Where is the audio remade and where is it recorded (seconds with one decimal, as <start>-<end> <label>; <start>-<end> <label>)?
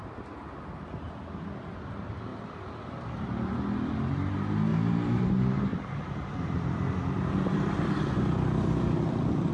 0.0-2.3 recorded; 2.3-2.8 remade; 2.8-4.7 recorded; 4.7-5.3 remade; 5.3-5.7 recorded; 5.7-9.5 remade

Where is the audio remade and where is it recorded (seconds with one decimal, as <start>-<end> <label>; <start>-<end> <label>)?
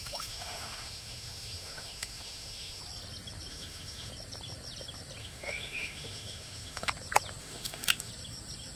0.0-2.8 remade; 2.8-3.5 recorded; 3.5-4.1 remade; 4.1-5.2 recorded; 5.2-6.9 remade; 6.9-7.4 recorded; 7.4-8.1 remade; 8.1-8.8 recorded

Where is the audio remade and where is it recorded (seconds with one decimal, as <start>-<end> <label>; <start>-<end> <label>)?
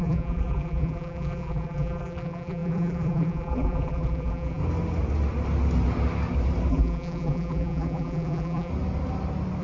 0.0-4.6 remade; 4.6-6.7 recorded; 6.7-8.7 remade; 8.7-9.6 recorded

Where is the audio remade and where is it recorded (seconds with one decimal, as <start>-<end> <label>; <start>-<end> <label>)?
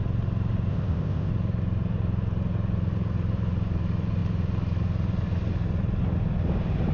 0.0-0.7 recorded; 0.7-1.3 remade; 1.3-6.9 recorded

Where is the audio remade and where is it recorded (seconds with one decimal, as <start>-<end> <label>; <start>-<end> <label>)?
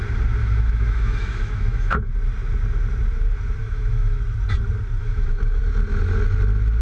0.0-0.4 recorded; 0.4-2.1 remade; 2.1-3.6 recorded; 3.6-4.2 remade; 4.2-5.0 recorded; 5.0-5.6 remade; 5.6-6.8 recorded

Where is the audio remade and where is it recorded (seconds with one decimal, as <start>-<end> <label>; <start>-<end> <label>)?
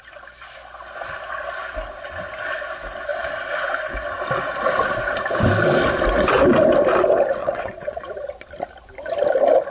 0.0-7.4 recorded; 7.4-8.1 remade; 8.1-9.7 recorded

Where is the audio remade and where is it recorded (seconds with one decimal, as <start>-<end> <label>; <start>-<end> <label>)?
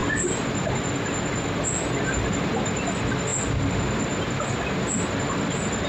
0.0-5.9 recorded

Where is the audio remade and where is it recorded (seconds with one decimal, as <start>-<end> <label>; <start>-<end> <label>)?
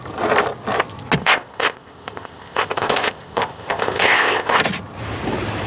0.0-1.2 recorded; 1.2-4.6 remade; 4.6-5.7 recorded